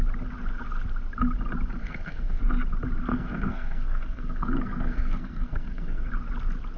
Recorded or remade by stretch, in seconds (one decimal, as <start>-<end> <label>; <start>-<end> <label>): 0.0-1.8 recorded; 1.8-2.4 remade; 2.4-3.1 recorded; 3.1-6.1 remade; 6.1-6.8 recorded